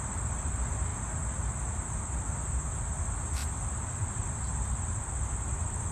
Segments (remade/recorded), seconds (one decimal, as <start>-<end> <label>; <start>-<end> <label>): 0.0-5.9 recorded